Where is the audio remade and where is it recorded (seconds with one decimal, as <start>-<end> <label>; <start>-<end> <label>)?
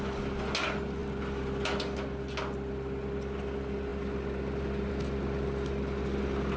0.0-6.6 recorded